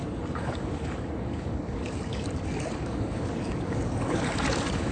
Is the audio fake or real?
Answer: fake